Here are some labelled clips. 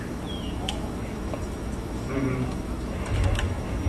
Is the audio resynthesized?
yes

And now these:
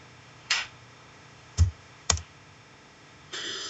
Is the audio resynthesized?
yes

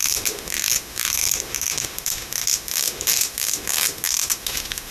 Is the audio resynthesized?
yes